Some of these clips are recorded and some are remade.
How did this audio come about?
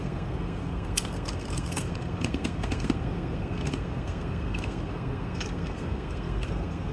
remade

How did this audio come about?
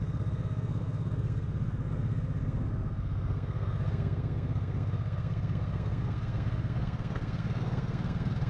remade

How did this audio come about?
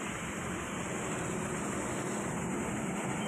recorded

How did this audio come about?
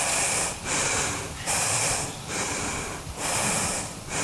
recorded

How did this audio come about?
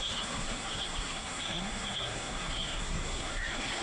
remade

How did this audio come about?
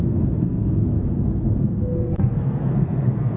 remade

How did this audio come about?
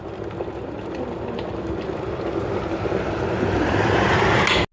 recorded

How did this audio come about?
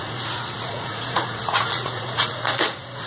remade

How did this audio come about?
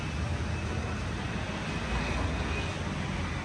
recorded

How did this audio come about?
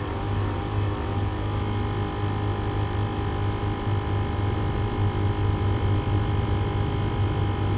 recorded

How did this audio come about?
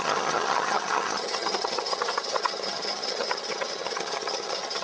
remade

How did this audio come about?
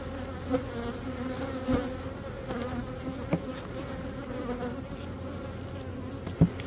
recorded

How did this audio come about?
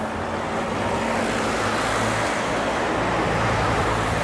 recorded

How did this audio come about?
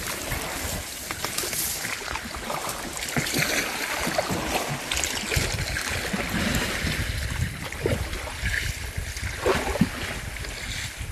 recorded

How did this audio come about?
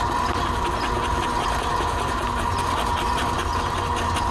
recorded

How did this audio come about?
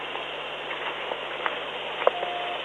recorded